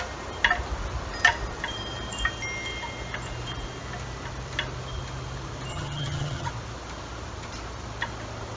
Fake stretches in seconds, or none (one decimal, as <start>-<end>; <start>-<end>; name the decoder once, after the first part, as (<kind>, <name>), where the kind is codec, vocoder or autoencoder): 5.7-6.5 (vocoder, HiFi-GAN)